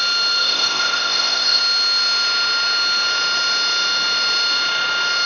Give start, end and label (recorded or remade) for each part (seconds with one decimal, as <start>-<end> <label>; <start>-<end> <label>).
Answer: 0.0-0.4 recorded; 0.4-1.6 remade; 1.6-5.3 recorded